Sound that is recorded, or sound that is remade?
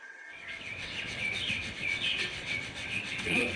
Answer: remade